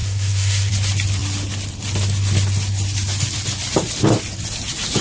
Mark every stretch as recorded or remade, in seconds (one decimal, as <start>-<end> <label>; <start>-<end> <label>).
0.0-0.7 remade; 0.7-5.0 recorded

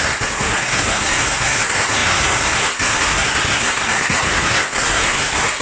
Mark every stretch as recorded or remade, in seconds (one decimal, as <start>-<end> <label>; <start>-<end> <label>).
0.0-5.6 remade

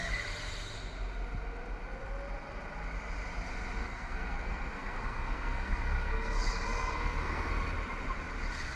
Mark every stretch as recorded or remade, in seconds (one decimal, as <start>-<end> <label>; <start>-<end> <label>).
0.0-3.8 recorded; 3.8-7.5 remade; 7.5-8.8 recorded